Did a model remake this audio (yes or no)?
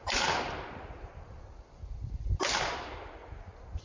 no